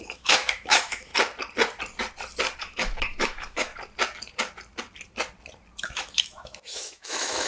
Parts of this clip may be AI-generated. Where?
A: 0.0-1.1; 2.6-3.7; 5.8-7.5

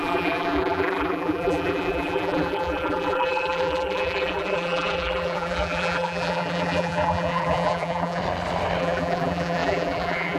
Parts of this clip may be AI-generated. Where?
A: 0.0-8.2; 8.8-10.4